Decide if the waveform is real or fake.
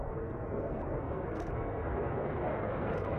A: fake